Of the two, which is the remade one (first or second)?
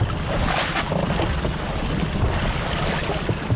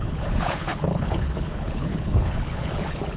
second